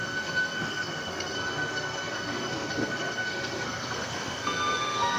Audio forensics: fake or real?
fake